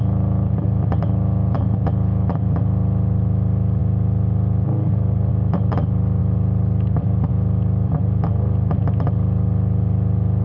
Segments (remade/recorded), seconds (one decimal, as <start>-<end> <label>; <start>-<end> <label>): 0.0-10.4 recorded